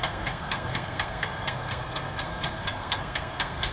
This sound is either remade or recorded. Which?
remade